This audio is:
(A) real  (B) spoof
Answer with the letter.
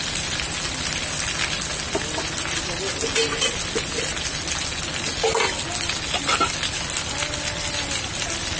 A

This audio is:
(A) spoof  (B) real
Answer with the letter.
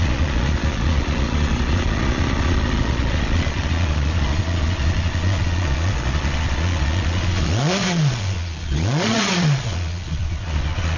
A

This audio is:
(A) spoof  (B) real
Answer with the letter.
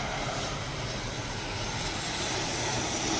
B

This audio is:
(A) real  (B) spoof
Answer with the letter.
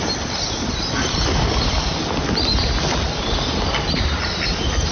A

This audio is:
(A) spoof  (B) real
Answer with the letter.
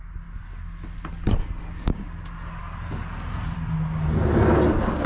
B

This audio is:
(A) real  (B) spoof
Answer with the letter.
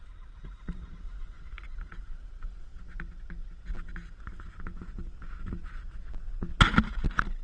A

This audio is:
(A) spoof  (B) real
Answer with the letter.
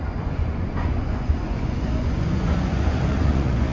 A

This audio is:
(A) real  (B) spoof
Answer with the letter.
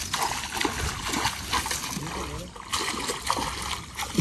A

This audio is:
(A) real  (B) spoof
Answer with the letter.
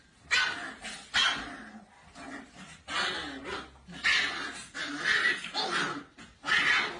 A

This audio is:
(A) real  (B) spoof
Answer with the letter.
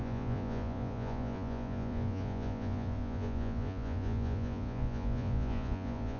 B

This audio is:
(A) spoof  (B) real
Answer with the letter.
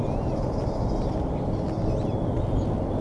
B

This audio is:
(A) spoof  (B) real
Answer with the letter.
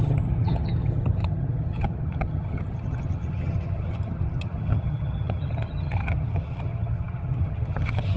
A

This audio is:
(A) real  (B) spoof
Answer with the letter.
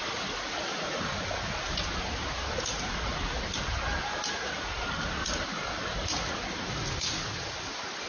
A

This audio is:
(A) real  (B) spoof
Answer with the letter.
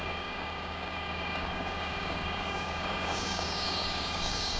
B